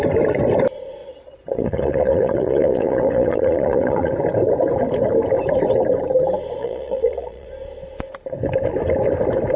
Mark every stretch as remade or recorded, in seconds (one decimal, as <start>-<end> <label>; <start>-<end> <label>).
0.0-1.0 recorded; 1.0-4.1 remade; 4.1-6.6 recorded; 6.6-7.5 remade; 7.5-9.6 recorded